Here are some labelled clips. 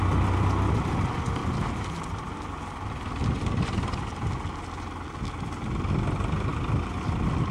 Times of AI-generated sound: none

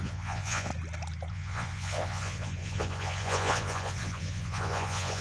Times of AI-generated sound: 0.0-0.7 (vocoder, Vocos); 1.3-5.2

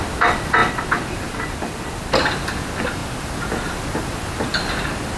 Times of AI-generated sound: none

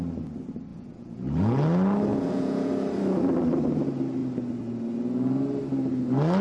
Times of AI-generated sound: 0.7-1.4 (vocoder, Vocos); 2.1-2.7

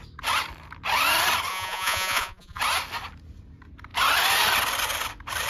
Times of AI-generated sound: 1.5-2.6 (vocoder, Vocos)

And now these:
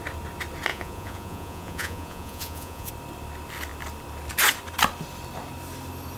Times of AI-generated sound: 0.7-2.9 (vocoder, Vocos)

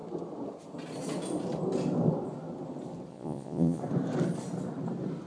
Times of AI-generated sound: 3.1-3.8 (vocoder, Vocos)

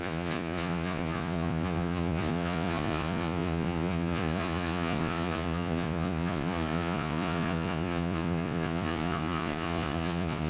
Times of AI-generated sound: 0.0-10.5 (vocoder, Vocos)